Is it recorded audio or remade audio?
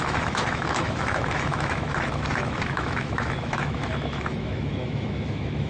remade